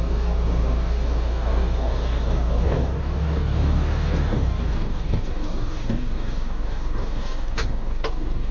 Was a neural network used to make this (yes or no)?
yes